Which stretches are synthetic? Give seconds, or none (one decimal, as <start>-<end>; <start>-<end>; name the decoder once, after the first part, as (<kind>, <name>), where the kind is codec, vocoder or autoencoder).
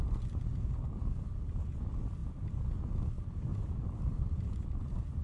3.5-4.5 (vocoder, BigVGAN v2)